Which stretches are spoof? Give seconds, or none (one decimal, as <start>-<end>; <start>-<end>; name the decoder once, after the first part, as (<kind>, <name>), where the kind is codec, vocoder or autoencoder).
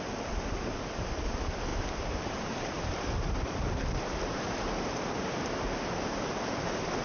1.7-2.7 (vocoder, BigVGAN v2); 3.8-5.4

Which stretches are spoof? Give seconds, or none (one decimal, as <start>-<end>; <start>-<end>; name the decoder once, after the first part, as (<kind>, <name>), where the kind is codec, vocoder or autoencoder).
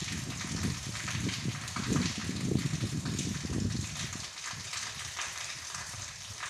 0.6-2.2 (vocoder, BigVGAN v2); 5.0-6.5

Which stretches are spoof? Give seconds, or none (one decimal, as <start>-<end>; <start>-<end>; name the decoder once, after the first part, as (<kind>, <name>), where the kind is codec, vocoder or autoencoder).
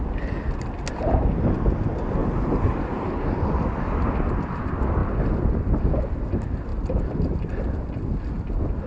2.2-3.1 (vocoder, BigVGAN v2)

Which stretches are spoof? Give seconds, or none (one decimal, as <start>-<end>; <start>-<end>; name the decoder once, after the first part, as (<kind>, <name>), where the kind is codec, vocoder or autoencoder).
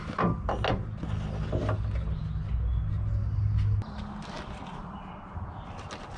none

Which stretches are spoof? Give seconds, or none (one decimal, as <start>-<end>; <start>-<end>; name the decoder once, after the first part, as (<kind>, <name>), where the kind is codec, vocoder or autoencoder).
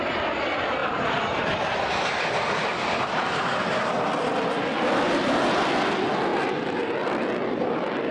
0.8-5.7 (vocoder, BigVGAN v2)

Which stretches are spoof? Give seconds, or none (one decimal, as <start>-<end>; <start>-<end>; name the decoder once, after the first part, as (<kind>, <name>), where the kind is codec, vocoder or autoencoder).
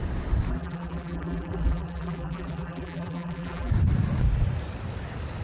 0.5-3.7 (vocoder, BigVGAN v2)